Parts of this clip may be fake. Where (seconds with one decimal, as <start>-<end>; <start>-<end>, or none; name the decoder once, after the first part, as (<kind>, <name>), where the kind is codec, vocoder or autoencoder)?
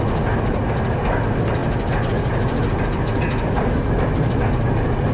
none